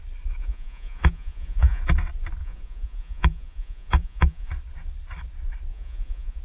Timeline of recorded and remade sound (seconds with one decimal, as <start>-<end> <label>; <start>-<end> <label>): 0.0-0.4 recorded; 0.4-1.8 remade; 1.8-2.4 recorded; 2.4-4.5 remade; 4.5-5.7 recorded; 5.7-6.4 remade